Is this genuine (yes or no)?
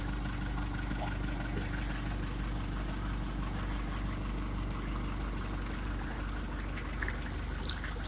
yes